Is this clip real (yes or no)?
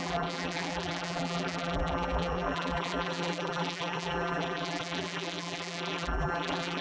no